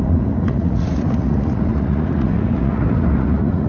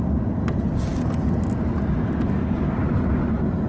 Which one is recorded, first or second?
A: second